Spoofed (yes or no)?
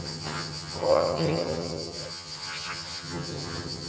yes